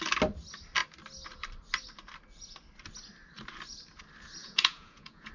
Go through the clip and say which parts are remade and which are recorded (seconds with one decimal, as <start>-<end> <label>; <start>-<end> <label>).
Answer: 0.0-4.4 recorded; 4.4-5.3 remade